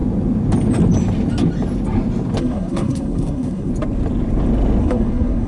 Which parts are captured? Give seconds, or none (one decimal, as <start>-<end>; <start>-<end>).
0.0-2.4; 3.7-4.8